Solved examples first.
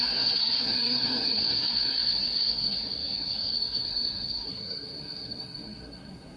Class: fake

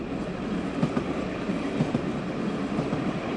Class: real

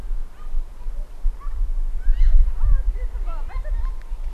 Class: real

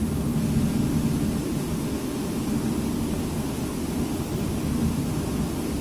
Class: real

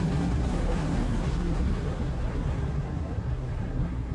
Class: fake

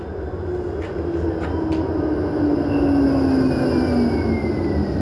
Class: real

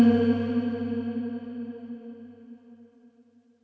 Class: real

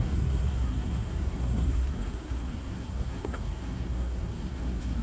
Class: fake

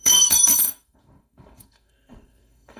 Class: fake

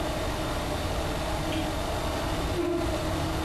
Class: real